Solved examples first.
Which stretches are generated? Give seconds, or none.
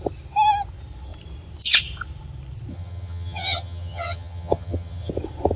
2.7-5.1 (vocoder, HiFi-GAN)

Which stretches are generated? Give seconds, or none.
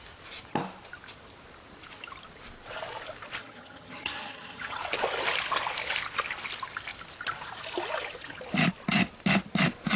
3.4-4.8 (vocoder, HiFi-GAN)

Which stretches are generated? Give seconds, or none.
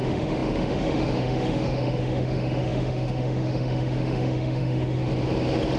0.0-5.0 (autoencoder, DAC-VAE)